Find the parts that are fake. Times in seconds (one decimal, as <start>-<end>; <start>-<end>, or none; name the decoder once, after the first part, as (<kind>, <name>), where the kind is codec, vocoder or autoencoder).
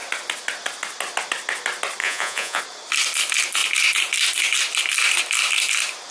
2.0-2.6 (vocoder, Vocos)